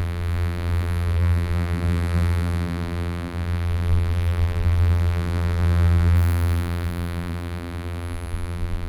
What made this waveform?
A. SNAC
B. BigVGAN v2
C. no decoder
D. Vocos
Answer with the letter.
B